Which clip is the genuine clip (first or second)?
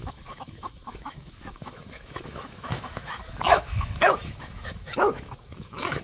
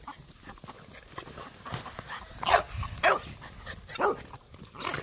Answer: second